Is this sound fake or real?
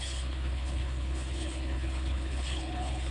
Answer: fake